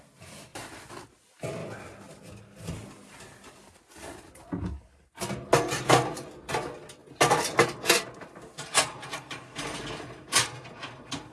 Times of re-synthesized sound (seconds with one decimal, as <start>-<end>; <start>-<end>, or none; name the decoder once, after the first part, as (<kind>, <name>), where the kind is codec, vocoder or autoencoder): none